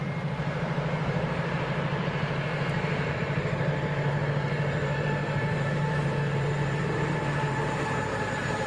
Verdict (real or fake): fake